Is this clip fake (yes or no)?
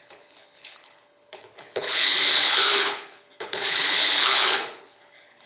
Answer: yes